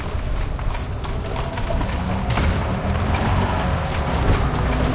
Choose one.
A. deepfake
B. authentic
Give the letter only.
B